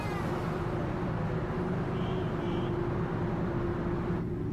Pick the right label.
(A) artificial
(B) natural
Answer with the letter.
B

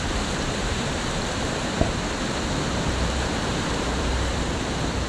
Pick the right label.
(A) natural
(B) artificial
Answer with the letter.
B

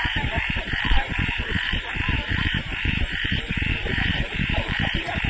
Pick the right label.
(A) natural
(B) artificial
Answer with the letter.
B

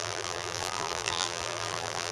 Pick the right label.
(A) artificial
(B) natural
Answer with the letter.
A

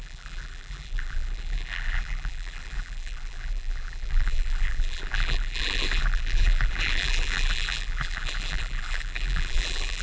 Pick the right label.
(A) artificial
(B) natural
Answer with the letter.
A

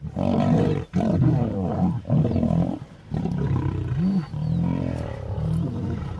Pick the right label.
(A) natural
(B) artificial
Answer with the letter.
B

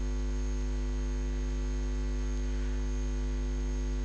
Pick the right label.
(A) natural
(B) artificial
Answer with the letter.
A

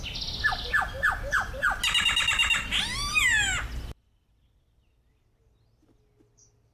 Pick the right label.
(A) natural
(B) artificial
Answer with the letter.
A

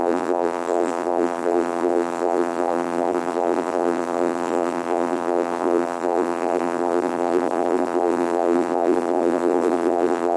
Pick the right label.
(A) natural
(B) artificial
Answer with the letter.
B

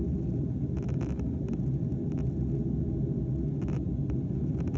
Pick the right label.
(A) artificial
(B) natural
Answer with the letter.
B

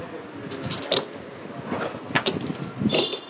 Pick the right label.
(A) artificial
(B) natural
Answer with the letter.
B